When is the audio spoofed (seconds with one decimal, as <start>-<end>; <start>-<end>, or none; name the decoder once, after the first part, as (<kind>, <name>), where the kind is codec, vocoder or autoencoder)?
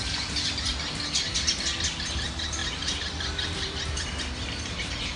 2.6-5.2 (vocoder, BigVGAN v2)